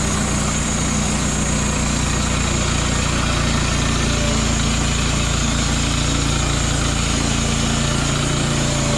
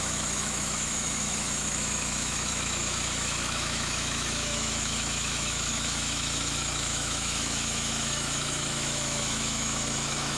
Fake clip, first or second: second